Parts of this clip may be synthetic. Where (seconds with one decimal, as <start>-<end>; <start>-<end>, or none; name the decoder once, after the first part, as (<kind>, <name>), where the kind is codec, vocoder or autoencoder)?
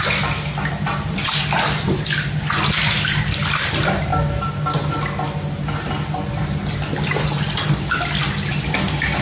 none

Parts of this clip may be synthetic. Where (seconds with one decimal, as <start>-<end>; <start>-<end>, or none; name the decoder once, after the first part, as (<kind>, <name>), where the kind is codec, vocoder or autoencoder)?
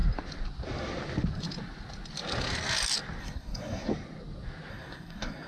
3.2-3.9 (codec, SNAC); 4.7-5.5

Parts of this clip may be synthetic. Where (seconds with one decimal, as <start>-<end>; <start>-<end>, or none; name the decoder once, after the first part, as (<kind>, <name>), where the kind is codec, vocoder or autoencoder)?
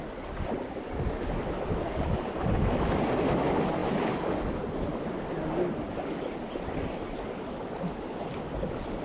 none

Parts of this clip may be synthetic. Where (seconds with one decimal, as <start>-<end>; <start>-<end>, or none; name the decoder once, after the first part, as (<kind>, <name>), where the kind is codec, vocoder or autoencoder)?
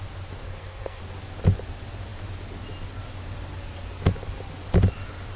0.4-1.0 (codec, SNAC)